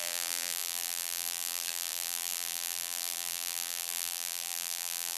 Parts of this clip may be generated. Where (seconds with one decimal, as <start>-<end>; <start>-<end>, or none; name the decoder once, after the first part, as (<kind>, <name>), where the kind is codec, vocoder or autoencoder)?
0.0-5.2 (vocoder, BigVGAN v2)